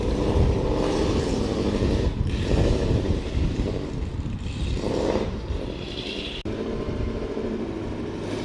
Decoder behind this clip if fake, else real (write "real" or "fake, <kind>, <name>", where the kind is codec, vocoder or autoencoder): fake, vocoder, BigVGAN v2